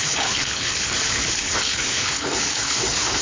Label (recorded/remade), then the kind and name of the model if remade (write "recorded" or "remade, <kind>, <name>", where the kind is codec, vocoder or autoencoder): remade, codec, HILCodec